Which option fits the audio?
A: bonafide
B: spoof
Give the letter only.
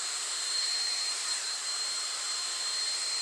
B